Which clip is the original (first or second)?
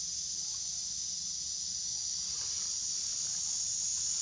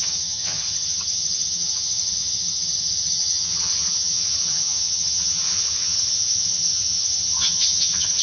first